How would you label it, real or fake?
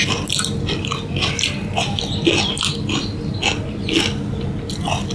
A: real